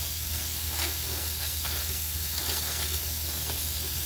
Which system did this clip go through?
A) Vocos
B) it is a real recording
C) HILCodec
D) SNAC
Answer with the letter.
D